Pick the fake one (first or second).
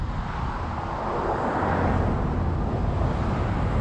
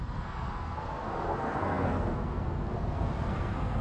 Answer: second